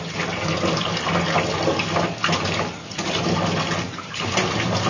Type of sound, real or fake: real